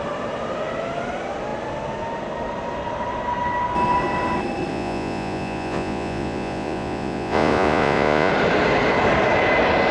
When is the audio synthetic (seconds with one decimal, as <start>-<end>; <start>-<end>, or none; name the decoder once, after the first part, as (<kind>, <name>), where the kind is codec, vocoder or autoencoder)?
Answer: 4.7-8.3 (vocoder, Vocos)